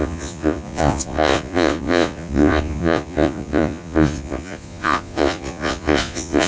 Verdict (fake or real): fake